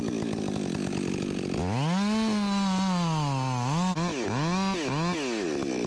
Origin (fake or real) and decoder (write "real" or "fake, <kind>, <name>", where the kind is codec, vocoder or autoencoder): real